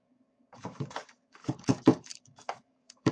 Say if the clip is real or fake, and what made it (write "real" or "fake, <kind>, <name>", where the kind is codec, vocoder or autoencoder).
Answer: fake, codec, DAC